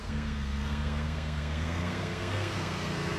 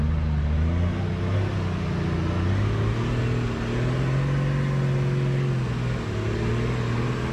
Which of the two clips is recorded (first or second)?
second